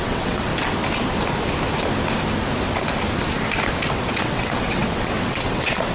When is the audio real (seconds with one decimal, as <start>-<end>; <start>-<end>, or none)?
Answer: 0.5-3.9